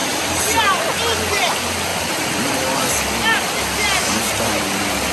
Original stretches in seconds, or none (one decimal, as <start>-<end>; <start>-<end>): 0.6-1.9; 2.5-5.1